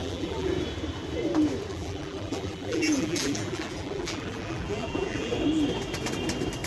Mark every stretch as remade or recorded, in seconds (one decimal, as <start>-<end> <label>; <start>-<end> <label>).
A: 0.0-0.5 remade; 0.5-1.7 recorded; 1.7-5.3 remade; 5.3-6.7 recorded